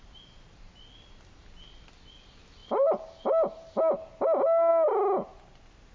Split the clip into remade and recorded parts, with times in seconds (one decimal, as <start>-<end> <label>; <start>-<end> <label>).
0.0-5.9 recorded